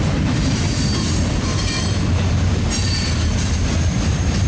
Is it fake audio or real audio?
fake